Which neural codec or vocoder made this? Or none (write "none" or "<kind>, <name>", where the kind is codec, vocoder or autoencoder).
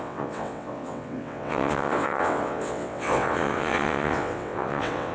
vocoder, WaveNeXt